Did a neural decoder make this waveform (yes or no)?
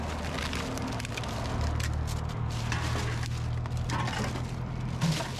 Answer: no